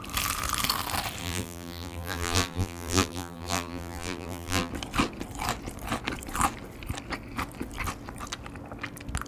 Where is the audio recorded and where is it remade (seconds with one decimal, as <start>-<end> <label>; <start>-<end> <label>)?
0.0-1.2 recorded; 1.2-4.7 remade; 4.7-9.3 recorded